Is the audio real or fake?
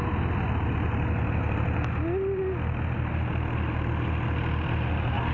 real